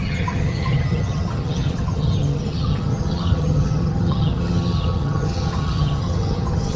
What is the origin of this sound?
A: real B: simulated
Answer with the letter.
B